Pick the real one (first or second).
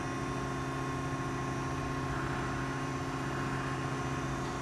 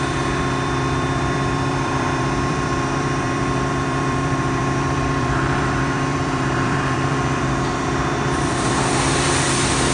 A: first